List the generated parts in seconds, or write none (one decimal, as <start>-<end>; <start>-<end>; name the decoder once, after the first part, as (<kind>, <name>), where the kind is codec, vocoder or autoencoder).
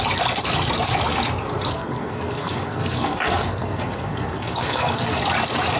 1.7-5.2 (codec, SNAC)